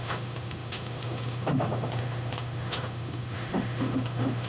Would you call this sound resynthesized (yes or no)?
yes